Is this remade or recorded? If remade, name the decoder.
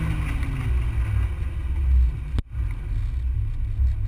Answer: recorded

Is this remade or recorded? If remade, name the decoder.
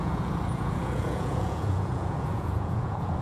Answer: remade, vocoder, Vocos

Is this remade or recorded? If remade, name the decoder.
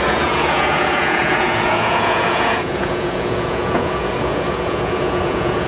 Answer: remade, vocoder, Vocos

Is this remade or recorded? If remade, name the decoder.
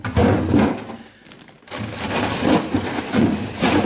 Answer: recorded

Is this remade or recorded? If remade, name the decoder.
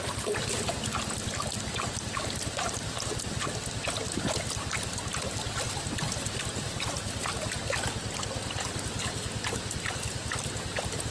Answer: recorded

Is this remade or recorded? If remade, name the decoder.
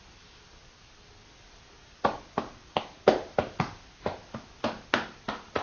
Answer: recorded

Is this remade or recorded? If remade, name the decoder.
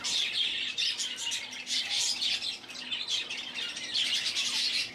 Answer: recorded